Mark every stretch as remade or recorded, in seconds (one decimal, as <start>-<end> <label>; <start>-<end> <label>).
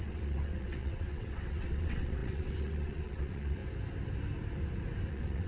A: 0.0-3.6 remade; 3.6-5.1 recorded; 5.1-5.5 remade